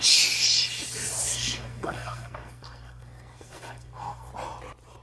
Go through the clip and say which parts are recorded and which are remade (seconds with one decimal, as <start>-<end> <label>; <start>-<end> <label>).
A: 0.0-1.3 recorded; 1.3-4.3 remade; 4.3-5.0 recorded